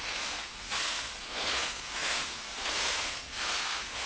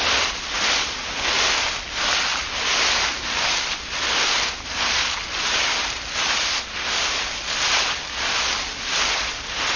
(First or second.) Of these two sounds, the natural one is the second